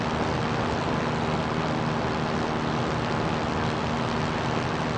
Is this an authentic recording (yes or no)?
yes